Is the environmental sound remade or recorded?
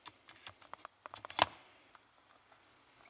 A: recorded